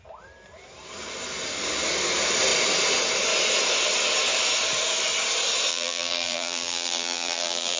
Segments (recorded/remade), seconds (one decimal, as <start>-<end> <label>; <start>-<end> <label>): 0.0-5.7 recorded; 5.7-7.8 remade